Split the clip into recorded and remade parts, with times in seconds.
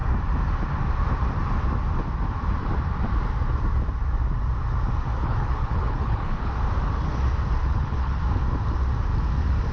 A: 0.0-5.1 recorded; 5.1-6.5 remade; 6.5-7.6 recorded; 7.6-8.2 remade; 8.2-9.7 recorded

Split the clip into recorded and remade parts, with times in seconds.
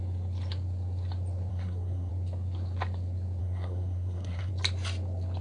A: 0.0-1.5 recorded; 1.5-2.1 remade; 2.1-3.4 recorded; 3.4-4.5 remade; 4.5-5.4 recorded